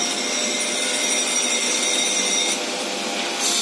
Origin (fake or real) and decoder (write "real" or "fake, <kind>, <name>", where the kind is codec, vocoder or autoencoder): real